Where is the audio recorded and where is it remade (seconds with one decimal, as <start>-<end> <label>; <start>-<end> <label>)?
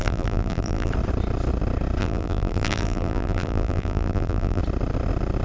0.0-0.9 remade; 0.9-2.0 recorded; 2.0-4.6 remade; 4.6-5.4 recorded